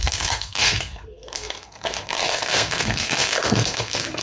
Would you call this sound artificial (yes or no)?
yes